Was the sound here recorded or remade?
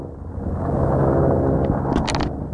recorded